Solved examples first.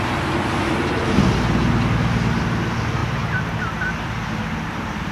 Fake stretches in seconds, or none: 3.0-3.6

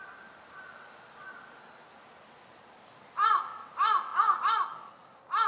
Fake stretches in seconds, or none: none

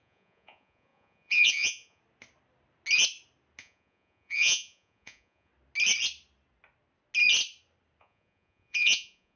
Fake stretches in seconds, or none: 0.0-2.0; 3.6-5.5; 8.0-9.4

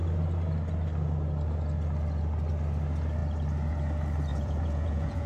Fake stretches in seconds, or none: 4.3-5.3

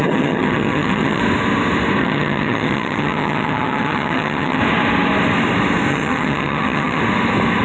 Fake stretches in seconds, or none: 0.0-1.2; 2.0-4.6; 5.9-7.0